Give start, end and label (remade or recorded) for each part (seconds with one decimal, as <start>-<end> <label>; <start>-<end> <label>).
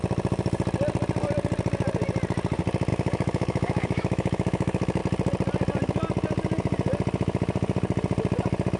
0.0-2.9 recorded; 2.9-5.0 remade; 5.0-8.8 recorded